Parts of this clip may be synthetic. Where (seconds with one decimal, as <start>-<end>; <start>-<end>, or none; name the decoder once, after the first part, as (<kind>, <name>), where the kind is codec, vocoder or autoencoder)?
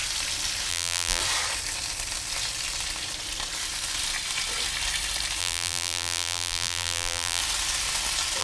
0.7-1.2 (vocoder, BigVGAN v2); 5.4-7.4